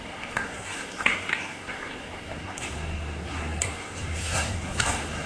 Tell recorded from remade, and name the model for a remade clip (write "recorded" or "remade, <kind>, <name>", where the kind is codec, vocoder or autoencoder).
remade, codec, SNAC